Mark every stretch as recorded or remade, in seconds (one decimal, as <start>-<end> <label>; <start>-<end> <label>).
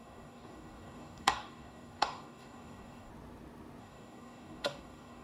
0.0-3.1 remade; 3.1-3.8 recorded; 3.8-5.2 remade